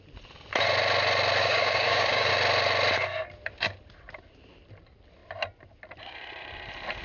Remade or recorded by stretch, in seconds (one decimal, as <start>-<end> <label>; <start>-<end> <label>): 0.0-1.4 recorded; 1.4-2.3 remade; 2.3-7.0 recorded